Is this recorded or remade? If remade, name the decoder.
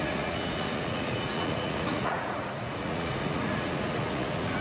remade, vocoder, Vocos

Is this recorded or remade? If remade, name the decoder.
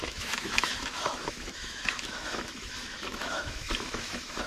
remade, autoencoder, DAC-VAE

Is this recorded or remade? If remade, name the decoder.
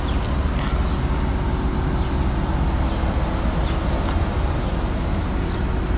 recorded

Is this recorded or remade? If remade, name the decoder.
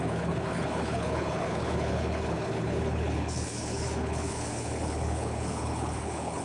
remade, codec, HILCodec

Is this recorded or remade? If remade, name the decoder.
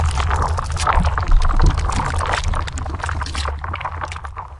remade, vocoder, BigVGAN v2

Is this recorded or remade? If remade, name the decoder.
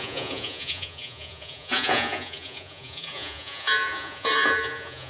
remade, vocoder, Vocos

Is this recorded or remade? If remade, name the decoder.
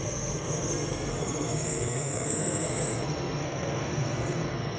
remade, codec, SNAC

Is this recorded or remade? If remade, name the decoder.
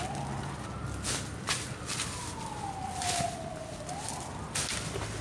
recorded